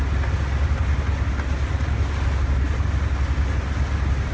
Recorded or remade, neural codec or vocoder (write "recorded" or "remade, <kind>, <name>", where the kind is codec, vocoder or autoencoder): recorded